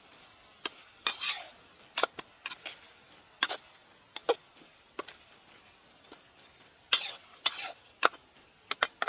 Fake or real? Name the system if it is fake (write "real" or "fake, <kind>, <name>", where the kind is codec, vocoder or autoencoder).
real